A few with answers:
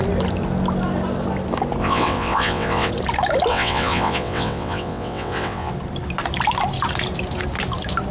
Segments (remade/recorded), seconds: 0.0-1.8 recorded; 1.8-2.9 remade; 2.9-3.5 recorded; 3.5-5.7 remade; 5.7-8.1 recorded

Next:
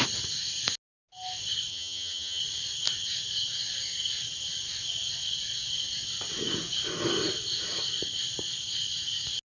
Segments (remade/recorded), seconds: 0.0-1.7 recorded; 1.7-2.4 remade; 2.4-9.5 recorded